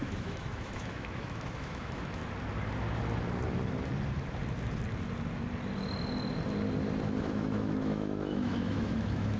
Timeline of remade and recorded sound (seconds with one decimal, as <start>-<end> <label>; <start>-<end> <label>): 0.0-2.2 remade; 2.2-7.2 recorded; 7.2-9.4 remade